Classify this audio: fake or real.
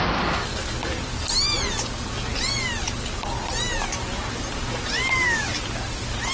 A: real